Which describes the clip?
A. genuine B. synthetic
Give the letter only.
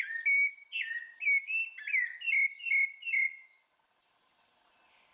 A